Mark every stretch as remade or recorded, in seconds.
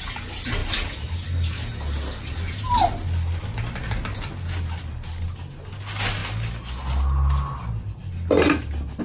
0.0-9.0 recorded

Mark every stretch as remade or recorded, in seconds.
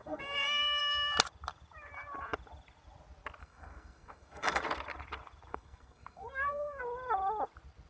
0.0-0.8 remade; 0.8-3.4 recorded; 3.4-4.6 remade; 4.6-5.5 recorded; 5.5-6.8 remade; 6.8-7.9 recorded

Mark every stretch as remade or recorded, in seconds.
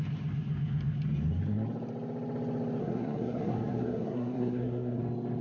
0.0-2.8 recorded; 2.8-5.0 remade; 5.0-5.4 recorded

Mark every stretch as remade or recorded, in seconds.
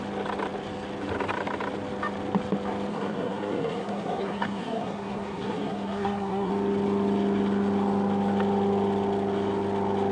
0.0-2.9 recorded; 2.9-6.5 remade; 6.5-10.1 recorded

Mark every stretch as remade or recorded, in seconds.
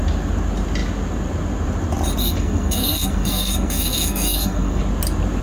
0.0-2.2 recorded; 2.2-4.8 remade; 4.8-5.4 recorded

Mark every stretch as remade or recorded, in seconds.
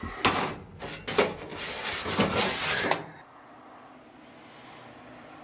0.0-5.4 recorded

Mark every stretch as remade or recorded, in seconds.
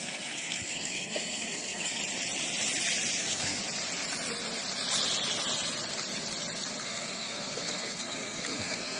0.0-2.0 remade; 2.0-3.2 recorded; 3.2-3.6 remade; 3.6-6.8 recorded; 6.8-9.0 remade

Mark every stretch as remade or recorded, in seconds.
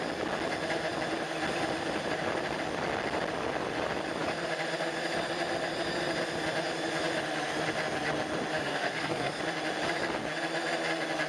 0.0-8.6 recorded; 8.6-9.4 remade; 9.4-11.3 recorded